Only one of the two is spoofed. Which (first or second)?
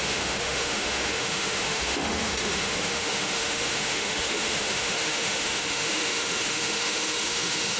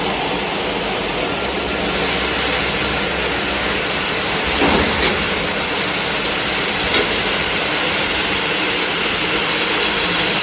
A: first